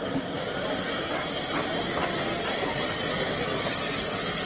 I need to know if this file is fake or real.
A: real